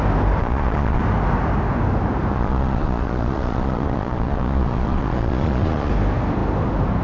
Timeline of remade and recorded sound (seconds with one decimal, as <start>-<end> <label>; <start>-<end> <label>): 0.0-0.4 recorded; 0.4-1.0 remade; 1.0-2.3 recorded; 2.3-5.9 remade; 5.9-7.0 recorded